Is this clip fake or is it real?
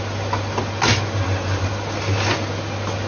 real